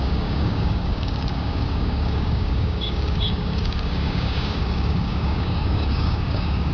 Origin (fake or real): fake